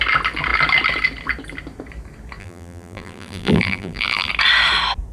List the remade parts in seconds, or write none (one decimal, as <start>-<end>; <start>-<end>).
2.4-4.3